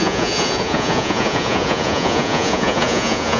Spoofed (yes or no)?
yes